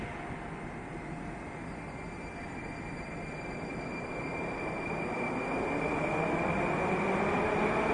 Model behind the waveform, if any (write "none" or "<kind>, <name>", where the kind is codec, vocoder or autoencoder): none